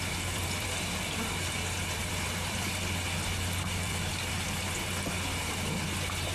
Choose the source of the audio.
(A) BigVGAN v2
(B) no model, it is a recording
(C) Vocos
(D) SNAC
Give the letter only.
A